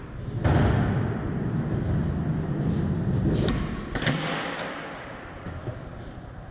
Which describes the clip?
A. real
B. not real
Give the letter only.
A